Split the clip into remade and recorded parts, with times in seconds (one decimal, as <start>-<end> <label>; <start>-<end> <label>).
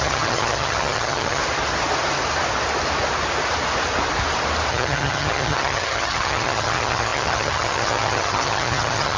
0.0-1.4 remade; 1.4-4.7 recorded; 4.7-9.2 remade